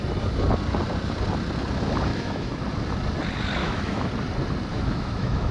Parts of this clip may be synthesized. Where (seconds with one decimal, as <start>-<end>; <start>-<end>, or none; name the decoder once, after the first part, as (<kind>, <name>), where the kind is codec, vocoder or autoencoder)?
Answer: 2.1-2.6 (autoencoder, DAC-VAE); 3.6-4.1; 4.7-5.5